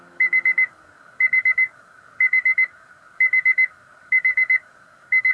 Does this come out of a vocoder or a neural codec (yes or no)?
yes